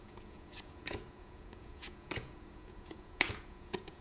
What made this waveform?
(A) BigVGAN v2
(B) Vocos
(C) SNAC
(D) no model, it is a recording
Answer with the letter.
B